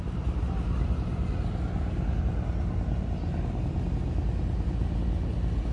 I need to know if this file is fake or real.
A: real